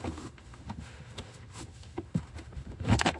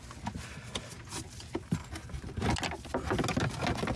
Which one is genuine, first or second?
second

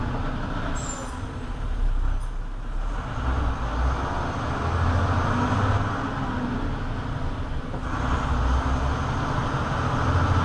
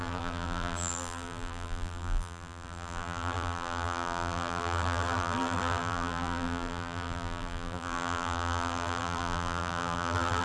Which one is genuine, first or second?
first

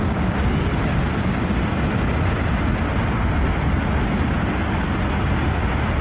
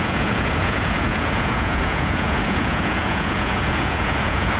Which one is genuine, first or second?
first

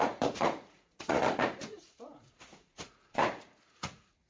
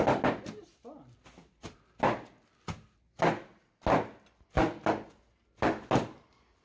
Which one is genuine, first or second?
second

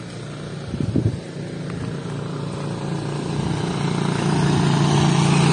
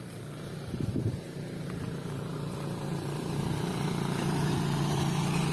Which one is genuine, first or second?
first